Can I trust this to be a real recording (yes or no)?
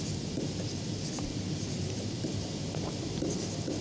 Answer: yes